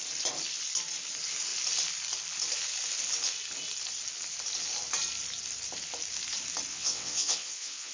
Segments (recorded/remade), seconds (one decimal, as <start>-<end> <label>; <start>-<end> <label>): 0.0-6.7 recorded; 6.7-7.9 remade